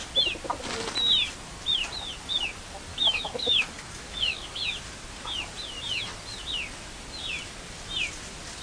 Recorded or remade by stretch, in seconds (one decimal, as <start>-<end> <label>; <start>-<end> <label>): 0.0-2.9 recorded; 2.9-4.6 remade; 4.6-8.6 recorded